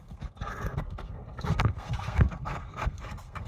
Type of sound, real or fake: fake